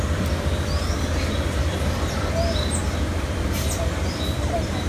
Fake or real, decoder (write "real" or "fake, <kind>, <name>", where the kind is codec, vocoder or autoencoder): fake, vocoder, BigVGAN v2